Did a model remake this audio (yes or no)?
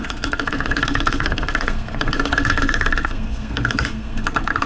yes